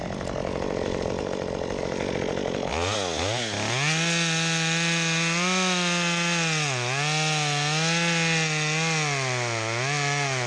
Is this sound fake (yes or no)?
no